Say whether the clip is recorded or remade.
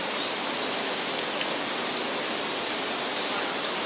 recorded